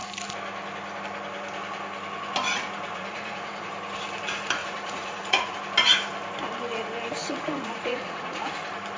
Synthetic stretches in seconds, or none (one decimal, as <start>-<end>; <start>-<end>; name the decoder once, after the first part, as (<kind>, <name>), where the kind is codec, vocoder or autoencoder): 2.9-3.6 (vocoder, Vocos); 4.6-5.5; 7.2-8.5

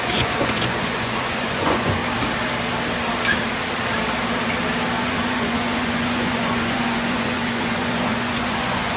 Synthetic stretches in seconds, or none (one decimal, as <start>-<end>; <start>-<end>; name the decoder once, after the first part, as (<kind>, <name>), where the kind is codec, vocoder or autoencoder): 0.0-2.0 (vocoder, Vocos); 5.0-9.0

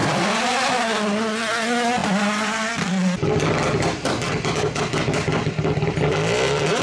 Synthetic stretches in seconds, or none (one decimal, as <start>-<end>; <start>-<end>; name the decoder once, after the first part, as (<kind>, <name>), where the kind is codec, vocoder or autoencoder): none

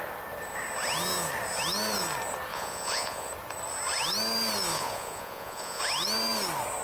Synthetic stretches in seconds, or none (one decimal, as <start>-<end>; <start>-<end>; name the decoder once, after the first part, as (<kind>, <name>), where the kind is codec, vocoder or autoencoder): 2.5-3.3 (vocoder, Vocos); 4.7-5.8

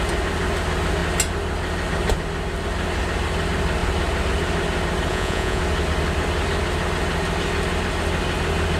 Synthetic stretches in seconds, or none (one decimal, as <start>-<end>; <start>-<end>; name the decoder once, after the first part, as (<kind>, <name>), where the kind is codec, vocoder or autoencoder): 5.1-5.6 (vocoder, Vocos)

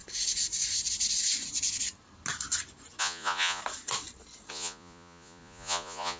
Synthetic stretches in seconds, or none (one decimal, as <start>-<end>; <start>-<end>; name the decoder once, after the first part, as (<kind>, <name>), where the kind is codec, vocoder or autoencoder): 3.0-3.6 (vocoder, Vocos); 4.5-6.2